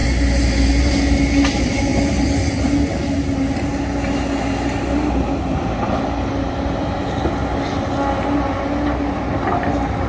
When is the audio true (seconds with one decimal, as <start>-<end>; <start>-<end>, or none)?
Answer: 0.0-10.1